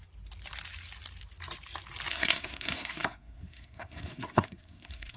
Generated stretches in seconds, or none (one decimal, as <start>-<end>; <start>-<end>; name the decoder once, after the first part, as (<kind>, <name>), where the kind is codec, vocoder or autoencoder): 2.1-5.2 (codec, SNAC)

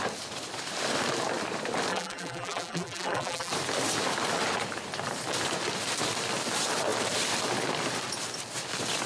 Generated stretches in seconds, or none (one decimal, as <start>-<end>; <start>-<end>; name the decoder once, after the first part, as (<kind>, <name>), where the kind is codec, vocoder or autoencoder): 1.9-3.5 (vocoder, BigVGAN v2)

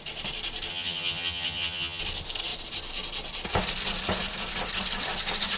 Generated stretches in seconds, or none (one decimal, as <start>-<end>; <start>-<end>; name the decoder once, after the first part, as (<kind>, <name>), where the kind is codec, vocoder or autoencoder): 0.7-2.0 (vocoder, HiFi-GAN)

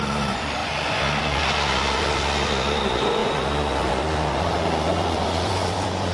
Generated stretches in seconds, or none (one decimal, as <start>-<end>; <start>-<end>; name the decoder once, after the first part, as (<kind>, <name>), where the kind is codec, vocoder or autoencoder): 0.0-6.1 (vocoder, Vocos)

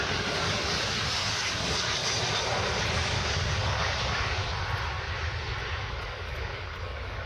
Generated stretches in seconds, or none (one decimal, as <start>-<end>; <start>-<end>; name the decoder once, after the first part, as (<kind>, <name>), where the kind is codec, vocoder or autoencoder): 0.0-2.0 (codec, DAC); 2.8-4.5; 5.8-7.3

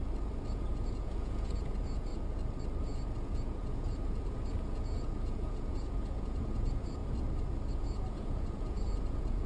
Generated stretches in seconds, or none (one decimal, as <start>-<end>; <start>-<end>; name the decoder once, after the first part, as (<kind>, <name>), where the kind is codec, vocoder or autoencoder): 0.5-2.1 (vocoder, Vocos); 2.8-7.0; 7.7-9.5